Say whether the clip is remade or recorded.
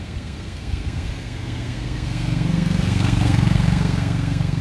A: remade